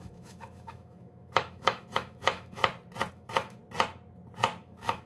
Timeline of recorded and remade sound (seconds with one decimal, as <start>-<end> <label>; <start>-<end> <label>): 0.0-2.6 remade; 2.6-3.1 recorded; 3.1-3.6 remade; 3.6-4.6 recorded; 4.6-5.1 remade